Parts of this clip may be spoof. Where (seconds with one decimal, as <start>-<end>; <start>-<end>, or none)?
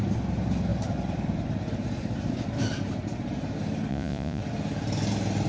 3.9-4.4